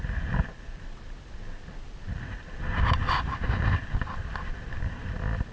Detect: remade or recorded recorded